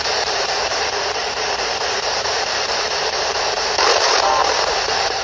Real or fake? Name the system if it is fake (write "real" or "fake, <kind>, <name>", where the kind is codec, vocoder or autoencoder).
fake, vocoder, BigVGAN v2